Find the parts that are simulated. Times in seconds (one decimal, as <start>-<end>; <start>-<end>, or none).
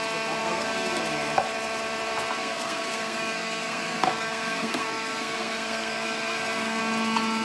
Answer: 0.4-1.0; 2.4-6.8